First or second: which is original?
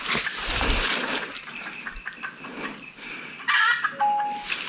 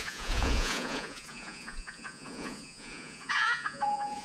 first